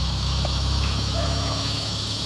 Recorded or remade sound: remade